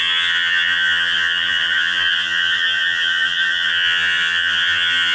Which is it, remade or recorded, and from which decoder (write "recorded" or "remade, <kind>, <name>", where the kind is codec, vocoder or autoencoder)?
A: remade, vocoder, HiFi-GAN